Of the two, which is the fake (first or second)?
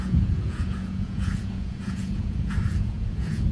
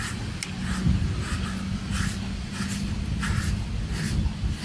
first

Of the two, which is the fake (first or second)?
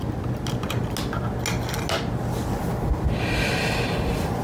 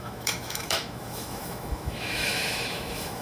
second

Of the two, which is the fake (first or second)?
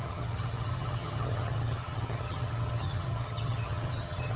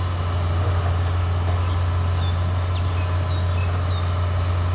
first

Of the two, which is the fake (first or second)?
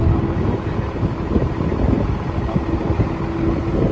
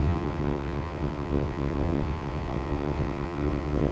second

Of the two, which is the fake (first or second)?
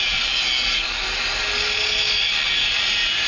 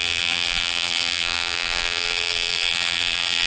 second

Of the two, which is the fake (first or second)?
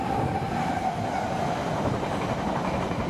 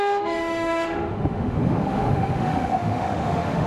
second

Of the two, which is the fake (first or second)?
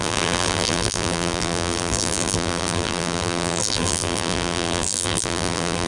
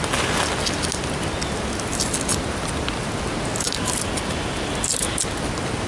first